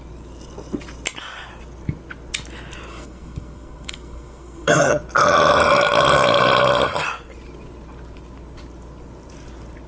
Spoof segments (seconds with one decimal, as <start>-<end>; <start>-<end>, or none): 2.9-4.9